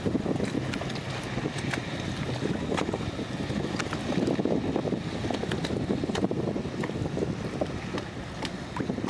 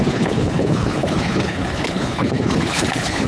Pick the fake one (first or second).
second